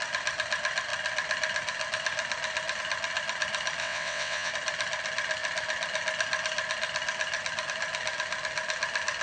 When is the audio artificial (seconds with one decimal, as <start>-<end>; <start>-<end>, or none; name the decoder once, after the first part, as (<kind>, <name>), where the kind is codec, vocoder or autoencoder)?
3.8-4.5 (vocoder, WaveNeXt)